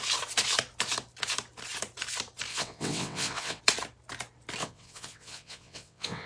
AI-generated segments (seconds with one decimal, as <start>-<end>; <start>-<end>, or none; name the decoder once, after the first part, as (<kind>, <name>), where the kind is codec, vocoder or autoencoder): 2.5-3.6 (vocoder, WaveNeXt); 4.6-6.3